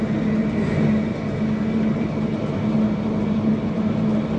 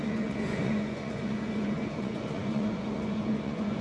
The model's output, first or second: second